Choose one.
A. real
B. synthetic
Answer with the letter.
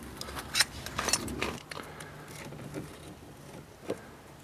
A